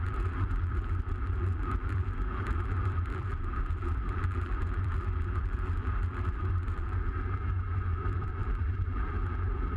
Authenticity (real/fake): fake